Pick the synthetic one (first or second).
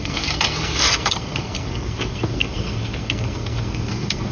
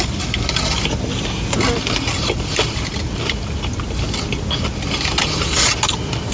first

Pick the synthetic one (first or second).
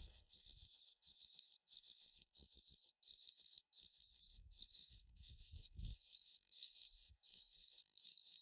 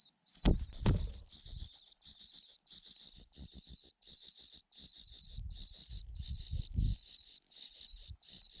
first